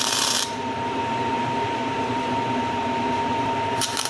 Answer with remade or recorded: remade